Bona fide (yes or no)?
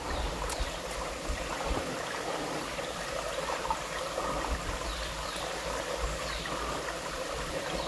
no